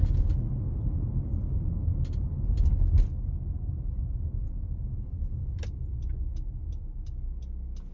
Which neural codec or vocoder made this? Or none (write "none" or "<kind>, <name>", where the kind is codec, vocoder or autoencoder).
none